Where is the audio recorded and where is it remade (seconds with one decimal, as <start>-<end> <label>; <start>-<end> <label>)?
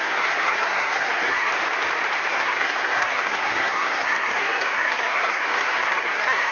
0.0-1.5 remade; 1.5-2.3 recorded; 2.3-6.5 remade